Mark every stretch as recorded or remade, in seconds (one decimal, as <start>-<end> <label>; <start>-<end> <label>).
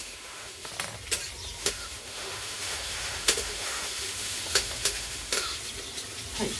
0.0-0.7 remade; 0.7-1.6 recorded; 1.6-5.6 remade; 5.6-6.6 recorded